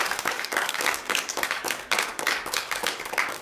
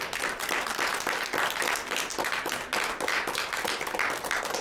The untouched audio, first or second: second